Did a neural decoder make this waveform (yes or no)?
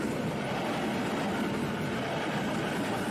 no